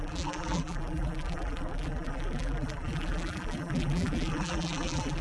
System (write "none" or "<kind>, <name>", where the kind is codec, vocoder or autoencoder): vocoder, BigVGAN v2